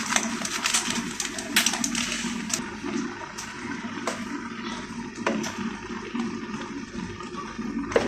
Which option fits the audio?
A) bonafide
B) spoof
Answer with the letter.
A